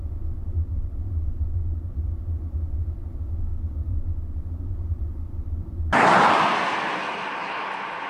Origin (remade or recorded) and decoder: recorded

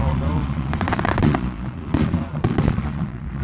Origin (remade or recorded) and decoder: remade, vocoder, Vocos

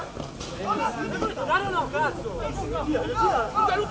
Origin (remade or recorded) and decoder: recorded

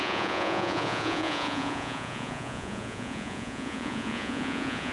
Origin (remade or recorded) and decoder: remade, vocoder, Vocos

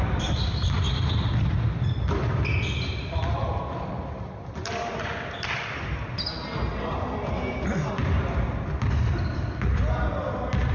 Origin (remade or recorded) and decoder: recorded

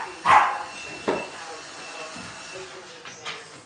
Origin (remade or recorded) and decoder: remade, vocoder, Vocos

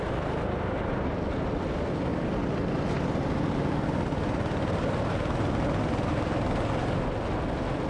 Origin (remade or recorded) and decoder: recorded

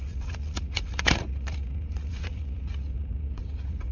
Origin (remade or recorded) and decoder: remade, vocoder, Vocos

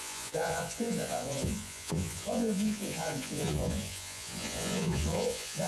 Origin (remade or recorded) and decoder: remade, vocoder, Vocos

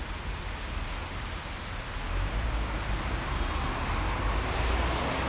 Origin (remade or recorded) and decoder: recorded